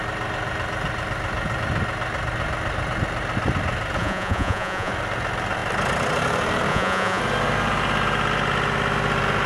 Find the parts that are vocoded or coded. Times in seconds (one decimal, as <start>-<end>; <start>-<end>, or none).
4.0-4.9; 6.7-7.2